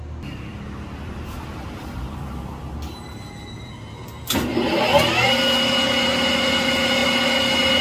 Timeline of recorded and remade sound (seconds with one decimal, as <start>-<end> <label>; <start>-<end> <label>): 0.0-7.8 recorded